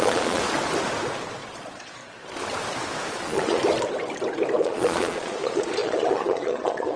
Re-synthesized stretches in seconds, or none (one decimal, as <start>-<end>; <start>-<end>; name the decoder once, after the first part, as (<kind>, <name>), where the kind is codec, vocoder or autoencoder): 0.0-0.4 (vocoder, Vocos); 1.5-2.0; 3.1-3.6; 4.6-7.0